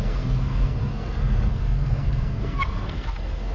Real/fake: fake